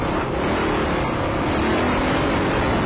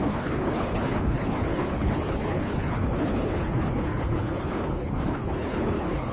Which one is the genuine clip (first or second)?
first